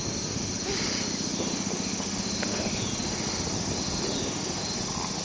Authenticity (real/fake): real